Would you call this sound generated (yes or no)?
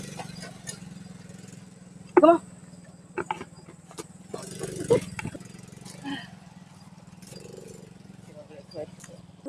no